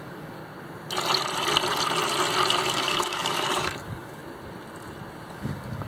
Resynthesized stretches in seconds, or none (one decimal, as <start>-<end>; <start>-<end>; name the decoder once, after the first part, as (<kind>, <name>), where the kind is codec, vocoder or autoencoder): 0.0-0.4 (codec, DAC); 2.7-4.2; 5.3-5.9